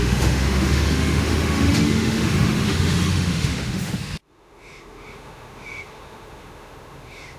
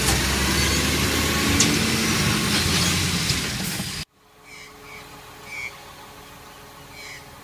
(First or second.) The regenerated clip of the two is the first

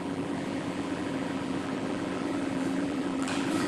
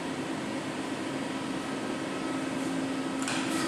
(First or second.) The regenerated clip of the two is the first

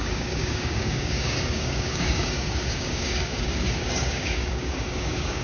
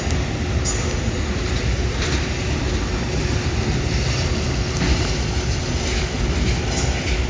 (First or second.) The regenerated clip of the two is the first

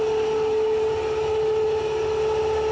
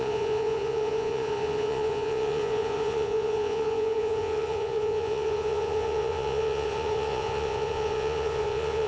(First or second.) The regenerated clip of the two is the second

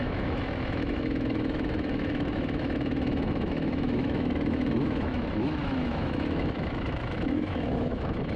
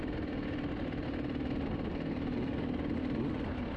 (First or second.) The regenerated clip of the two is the first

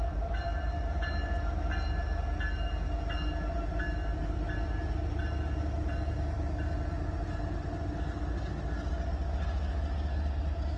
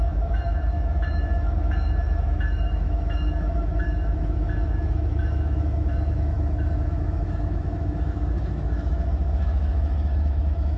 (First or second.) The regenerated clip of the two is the second